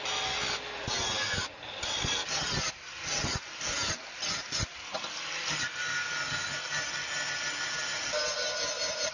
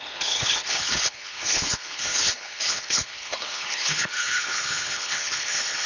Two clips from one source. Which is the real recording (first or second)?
first